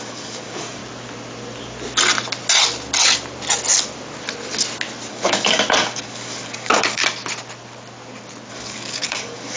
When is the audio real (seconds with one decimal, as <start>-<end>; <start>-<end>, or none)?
0.8-5.1; 7.0-8.5